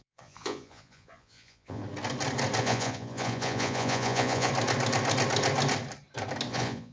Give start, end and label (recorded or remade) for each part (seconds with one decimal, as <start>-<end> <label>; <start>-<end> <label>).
0.0-1.8 remade; 1.8-2.6 recorded; 2.6-4.5 remade; 4.5-6.5 recorded; 6.5-6.9 remade